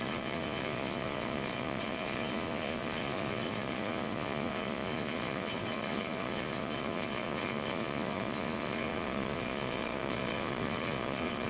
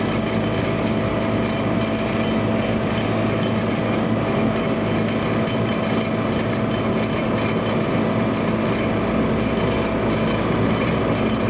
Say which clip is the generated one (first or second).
first